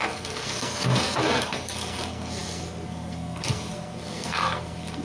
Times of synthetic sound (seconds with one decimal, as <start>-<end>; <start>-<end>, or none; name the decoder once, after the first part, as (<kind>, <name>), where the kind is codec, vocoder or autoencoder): 0.0-5.0 (codec, SNAC)